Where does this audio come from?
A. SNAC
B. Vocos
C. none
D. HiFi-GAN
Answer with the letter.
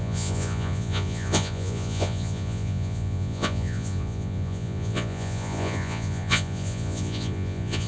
B